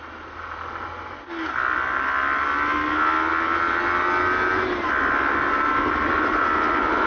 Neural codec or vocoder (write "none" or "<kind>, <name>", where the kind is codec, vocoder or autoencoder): none